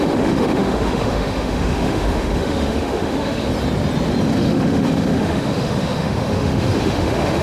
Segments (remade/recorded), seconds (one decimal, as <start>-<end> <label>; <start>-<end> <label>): 0.0-3.5 remade; 3.5-4.3 recorded; 4.3-7.4 remade